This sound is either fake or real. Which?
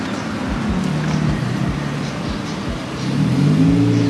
real